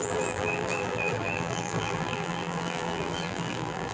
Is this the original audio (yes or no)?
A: no